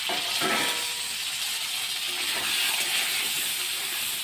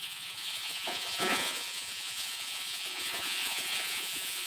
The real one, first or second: first